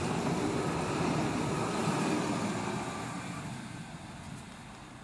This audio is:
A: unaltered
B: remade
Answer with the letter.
A